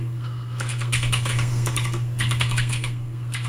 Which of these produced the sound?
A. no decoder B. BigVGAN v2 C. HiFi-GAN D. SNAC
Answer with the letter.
D